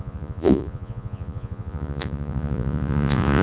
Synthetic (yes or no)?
yes